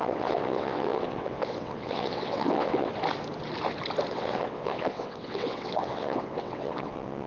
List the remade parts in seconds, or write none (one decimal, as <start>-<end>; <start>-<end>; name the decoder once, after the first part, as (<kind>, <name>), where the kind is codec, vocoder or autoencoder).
0.0-2.9 (vocoder, WaveNeXt); 4.1-7.3